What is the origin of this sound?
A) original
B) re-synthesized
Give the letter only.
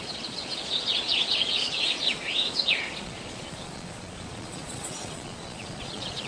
B